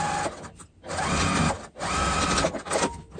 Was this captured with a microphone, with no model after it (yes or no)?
yes